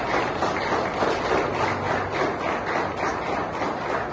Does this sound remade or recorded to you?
recorded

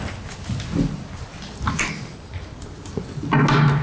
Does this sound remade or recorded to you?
recorded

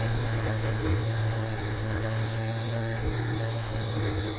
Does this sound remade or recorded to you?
remade